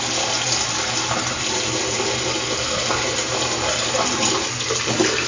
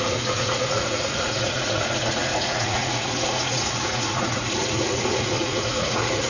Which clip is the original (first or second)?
first